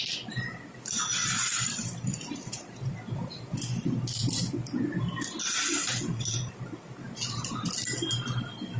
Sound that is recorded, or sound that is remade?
recorded